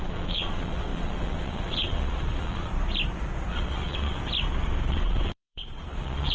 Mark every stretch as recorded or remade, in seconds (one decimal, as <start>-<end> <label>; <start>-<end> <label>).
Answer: 0.0-2.7 remade; 2.7-3.5 recorded; 3.5-4.2 remade; 4.2-4.9 recorded; 4.9-6.3 remade